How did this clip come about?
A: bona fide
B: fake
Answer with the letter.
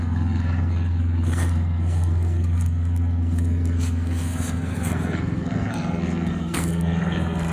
B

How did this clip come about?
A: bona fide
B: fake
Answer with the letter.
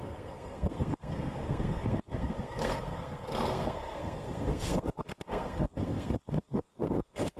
B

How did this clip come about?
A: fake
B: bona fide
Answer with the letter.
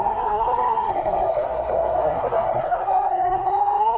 A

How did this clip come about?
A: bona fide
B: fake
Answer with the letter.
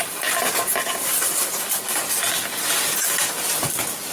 A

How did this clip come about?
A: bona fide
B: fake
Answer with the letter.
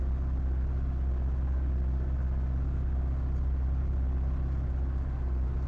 A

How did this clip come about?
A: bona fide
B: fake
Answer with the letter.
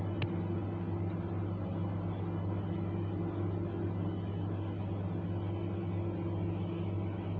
A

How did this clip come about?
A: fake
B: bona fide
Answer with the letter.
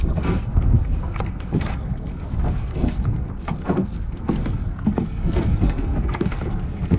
A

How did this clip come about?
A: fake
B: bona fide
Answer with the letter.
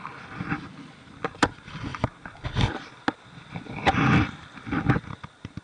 B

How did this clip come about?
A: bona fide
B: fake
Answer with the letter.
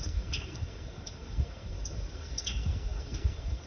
B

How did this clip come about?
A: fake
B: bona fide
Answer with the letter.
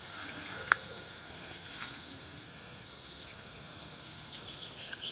A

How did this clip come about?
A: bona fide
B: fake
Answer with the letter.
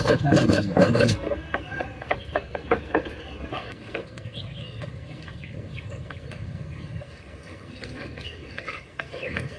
B